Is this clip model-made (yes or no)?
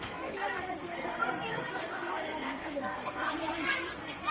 yes